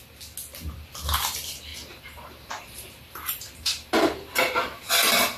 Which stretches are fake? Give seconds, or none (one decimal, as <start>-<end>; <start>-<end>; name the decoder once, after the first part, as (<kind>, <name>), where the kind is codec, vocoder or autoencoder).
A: 1.7-4.9 (vocoder, BigVGAN v2)